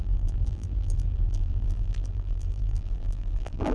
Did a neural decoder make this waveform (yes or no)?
yes